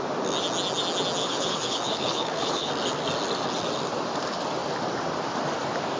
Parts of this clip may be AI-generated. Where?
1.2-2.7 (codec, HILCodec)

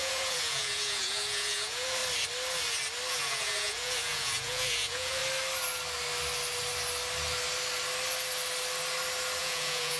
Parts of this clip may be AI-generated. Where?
0.0-2.0 (vocoder, Vocos); 3.1-5.2; 9.4-10.0

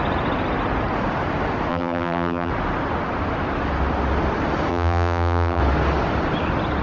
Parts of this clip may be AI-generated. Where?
1.7-2.5 (vocoder, BigVGAN v2); 4.7-5.6

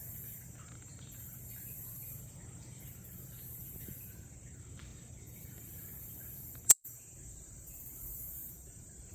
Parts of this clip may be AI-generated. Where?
0.0-9.1 (vocoder, BigVGAN v2)

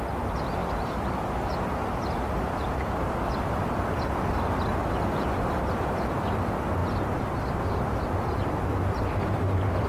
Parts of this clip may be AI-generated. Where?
0.6-4.0 (vocoder, BigVGAN v2)